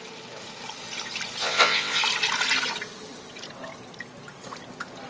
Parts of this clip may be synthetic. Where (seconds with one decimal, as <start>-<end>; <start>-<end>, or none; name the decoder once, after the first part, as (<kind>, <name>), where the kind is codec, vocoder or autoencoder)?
1.4-2.0 (vocoder, WaveNeXt)